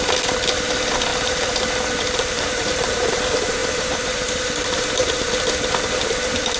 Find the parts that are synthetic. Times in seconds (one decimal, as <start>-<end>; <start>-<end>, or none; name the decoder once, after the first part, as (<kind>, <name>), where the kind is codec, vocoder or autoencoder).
1.1-3.2 (vocoder, BigVGAN v2); 3.6-5.3